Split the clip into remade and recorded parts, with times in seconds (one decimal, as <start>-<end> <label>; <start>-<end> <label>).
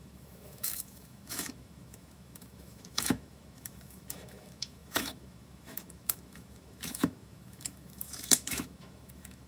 0.0-9.5 remade